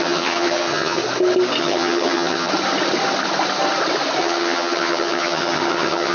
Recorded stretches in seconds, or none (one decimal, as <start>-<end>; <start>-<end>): 1.0-1.6; 2.5-4.2